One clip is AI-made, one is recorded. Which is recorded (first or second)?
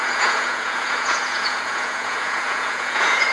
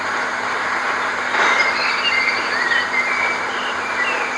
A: second